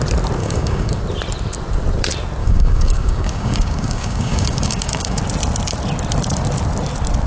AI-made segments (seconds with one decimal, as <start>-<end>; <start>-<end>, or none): 0.4-1.0; 2.4-5.2